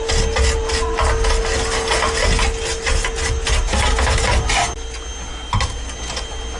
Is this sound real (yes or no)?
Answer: yes